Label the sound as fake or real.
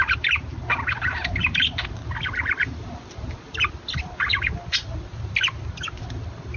real